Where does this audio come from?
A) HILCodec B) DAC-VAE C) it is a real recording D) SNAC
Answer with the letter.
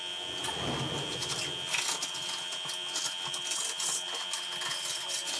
C